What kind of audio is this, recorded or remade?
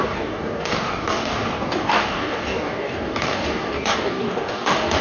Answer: remade